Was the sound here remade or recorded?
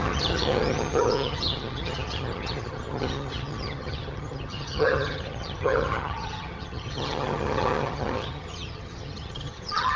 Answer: remade